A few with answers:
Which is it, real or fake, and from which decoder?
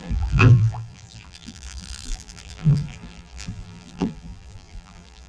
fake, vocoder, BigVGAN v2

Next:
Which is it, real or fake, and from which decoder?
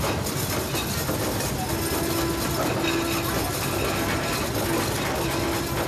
real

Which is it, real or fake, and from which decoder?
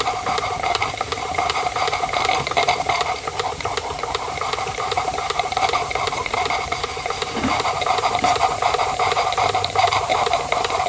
fake, vocoder, BigVGAN v2